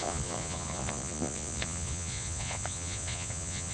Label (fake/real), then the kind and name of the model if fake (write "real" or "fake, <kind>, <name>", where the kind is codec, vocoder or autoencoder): fake, vocoder, Vocos